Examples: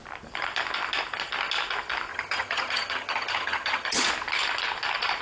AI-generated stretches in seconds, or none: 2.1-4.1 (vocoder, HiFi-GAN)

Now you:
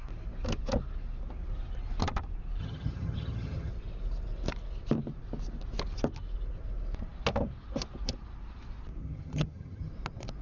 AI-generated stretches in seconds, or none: 2.6-3.7 (vocoder, HiFi-GAN); 9.0-9.9

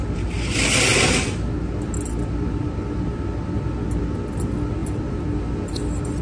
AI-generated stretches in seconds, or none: none

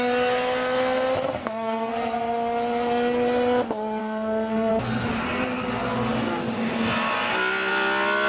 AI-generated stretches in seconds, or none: 1.4-1.9 (codec, SNAC); 4.0-4.7

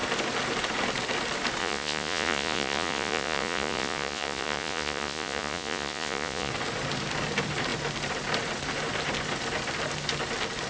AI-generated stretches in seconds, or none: 1.6-6.5 (vocoder, Vocos)

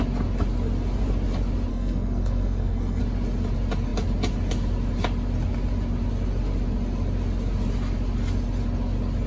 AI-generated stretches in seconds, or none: 1.7-3.0 (codec, SNAC)